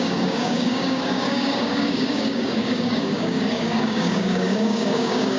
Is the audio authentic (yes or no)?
no